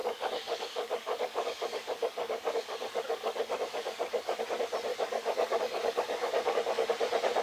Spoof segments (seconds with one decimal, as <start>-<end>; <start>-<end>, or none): 0.0-4.4; 4.9-6.9